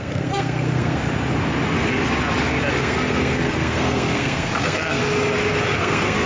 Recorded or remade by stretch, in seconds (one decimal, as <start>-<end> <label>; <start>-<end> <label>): 0.0-1.0 remade; 1.0-2.7 recorded; 2.7-5.0 remade; 5.0-5.8 recorded; 5.8-6.3 remade